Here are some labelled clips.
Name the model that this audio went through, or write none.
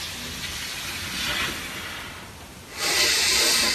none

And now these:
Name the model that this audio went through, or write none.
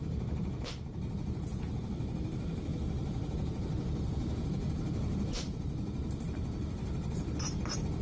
vocoder, BigVGAN v2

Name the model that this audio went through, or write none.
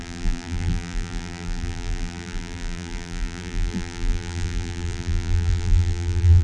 vocoder, BigVGAN v2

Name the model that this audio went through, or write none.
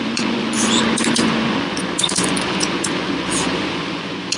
vocoder, Vocos